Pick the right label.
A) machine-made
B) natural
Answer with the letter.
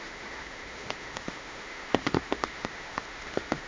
A